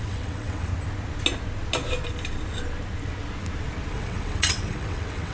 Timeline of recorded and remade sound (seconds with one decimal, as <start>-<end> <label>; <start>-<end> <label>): 0.0-0.7 remade; 0.7-3.9 recorded; 3.9-5.3 remade